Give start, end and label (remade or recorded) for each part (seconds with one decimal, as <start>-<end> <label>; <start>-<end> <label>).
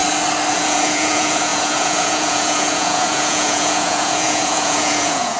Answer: 0.0-0.5 recorded; 0.5-5.4 remade